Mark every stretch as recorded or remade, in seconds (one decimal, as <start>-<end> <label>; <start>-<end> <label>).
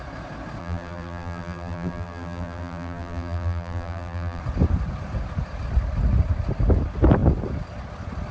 0.0-0.6 recorded; 0.6-4.4 remade; 4.4-8.3 recorded